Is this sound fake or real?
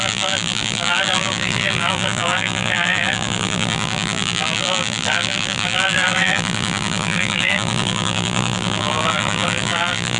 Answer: fake